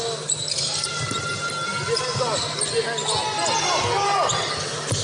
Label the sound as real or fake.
real